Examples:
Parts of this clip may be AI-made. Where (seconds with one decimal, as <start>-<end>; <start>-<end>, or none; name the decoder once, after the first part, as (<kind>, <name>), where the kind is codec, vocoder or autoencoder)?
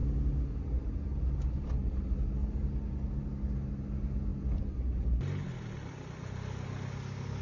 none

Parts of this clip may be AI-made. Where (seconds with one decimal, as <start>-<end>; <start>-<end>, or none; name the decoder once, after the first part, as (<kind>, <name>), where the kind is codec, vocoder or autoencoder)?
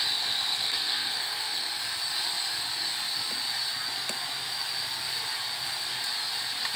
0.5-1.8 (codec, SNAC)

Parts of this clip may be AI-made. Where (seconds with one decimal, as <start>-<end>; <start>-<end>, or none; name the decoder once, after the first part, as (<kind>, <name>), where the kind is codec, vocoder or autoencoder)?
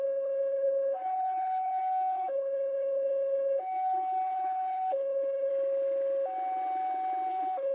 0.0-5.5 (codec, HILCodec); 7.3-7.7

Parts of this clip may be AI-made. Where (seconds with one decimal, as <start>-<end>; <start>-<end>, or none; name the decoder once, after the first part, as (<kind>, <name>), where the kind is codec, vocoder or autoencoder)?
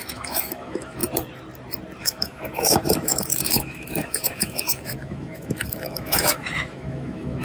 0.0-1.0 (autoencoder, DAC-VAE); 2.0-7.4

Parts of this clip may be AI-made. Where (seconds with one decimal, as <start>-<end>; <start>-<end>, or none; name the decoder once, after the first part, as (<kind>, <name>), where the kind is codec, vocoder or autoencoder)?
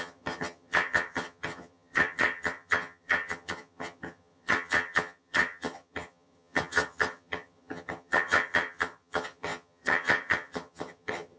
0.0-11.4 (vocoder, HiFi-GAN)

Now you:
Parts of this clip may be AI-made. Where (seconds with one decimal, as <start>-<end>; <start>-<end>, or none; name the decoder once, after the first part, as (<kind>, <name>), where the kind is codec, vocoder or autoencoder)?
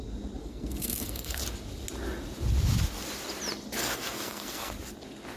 0.4-1.4 (codec, SNAC); 3.8-4.7